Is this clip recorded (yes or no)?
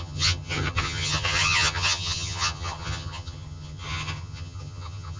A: no